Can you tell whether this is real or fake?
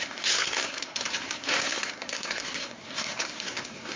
fake